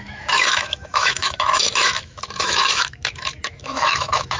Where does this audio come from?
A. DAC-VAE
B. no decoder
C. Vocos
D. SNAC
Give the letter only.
A